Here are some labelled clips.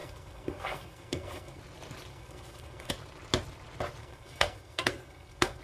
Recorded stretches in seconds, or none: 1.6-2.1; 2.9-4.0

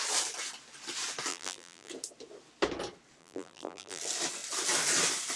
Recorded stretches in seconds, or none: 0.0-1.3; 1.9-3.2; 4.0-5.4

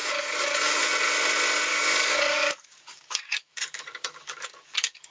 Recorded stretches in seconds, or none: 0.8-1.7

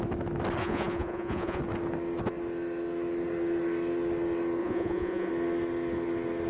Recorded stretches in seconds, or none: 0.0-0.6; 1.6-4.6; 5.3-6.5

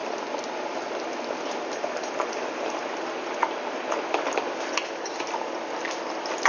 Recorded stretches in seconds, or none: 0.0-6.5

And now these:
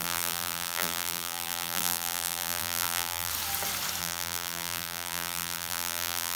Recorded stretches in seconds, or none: 3.3-4.0

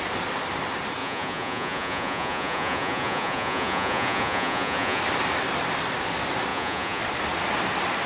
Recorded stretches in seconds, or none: 0.0-1.0; 5.0-6.5; 7.0-8.1

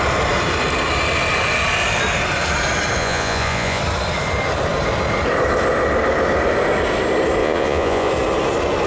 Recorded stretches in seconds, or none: 0.0-3.0; 3.8-7.4; 8.1-8.9